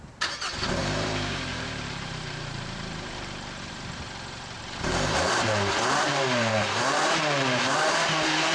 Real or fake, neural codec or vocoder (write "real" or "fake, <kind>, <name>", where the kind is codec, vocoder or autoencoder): fake, vocoder, BigVGAN v2